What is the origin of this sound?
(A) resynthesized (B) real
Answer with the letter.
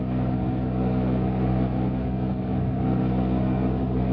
A